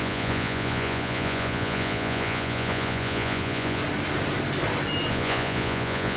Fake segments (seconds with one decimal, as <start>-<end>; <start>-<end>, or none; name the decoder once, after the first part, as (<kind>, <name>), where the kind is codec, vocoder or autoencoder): 0.0-3.8 (vocoder, Vocos); 5.1-6.2